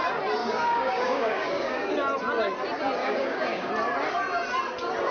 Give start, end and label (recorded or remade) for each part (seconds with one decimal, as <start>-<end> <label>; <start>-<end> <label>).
0.0-0.4 recorded; 0.4-1.9 remade; 1.9-3.0 recorded; 3.0-3.7 remade; 3.7-5.1 recorded